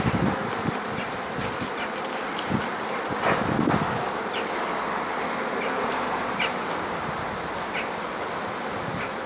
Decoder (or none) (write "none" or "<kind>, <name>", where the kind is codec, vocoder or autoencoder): none